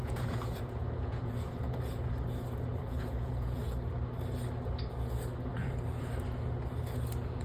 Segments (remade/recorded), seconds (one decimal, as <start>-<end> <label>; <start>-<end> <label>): 0.0-2.1 remade; 2.1-2.7 recorded; 2.7-3.6 remade; 3.6-5.5 recorded; 5.5-6.1 remade; 6.1-7.4 recorded